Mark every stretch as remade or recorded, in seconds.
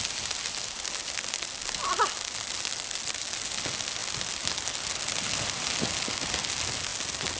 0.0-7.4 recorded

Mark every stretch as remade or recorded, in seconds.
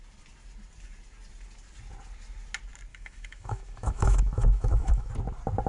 0.0-2.9 recorded; 2.9-5.1 remade; 5.1-5.7 recorded